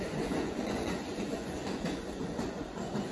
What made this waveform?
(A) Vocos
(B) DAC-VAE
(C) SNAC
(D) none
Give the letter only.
A